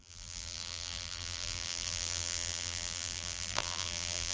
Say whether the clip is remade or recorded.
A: remade